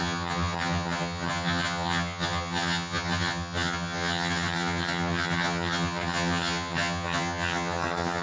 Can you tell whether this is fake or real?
fake